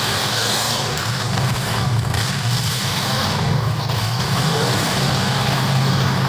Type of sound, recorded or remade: remade